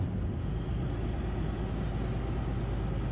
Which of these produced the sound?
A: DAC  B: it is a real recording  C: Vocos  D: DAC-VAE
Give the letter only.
B